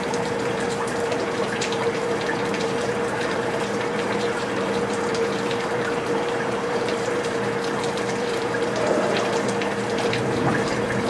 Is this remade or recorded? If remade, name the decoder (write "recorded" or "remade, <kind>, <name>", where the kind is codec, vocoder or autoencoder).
remade, vocoder, BigVGAN v2